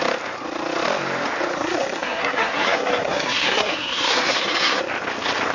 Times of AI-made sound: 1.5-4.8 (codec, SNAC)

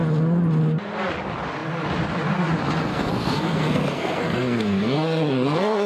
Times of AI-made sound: 2.9-5.9 (codec, SNAC)

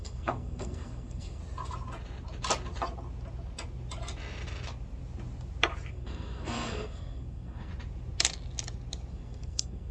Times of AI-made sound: 0.0-1.4 (codec, SNAC); 5.9-7.7; 9.1-9.9